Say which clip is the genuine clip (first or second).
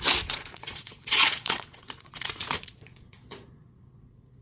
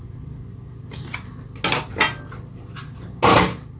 second